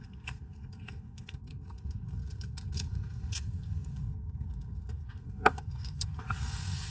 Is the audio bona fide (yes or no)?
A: no